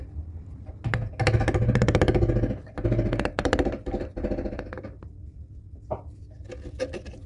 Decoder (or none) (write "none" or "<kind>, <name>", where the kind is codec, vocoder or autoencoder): none